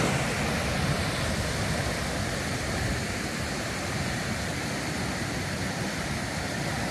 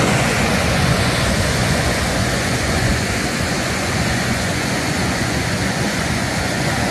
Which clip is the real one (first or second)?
first